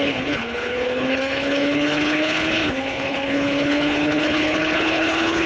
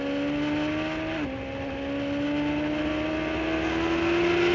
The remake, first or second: first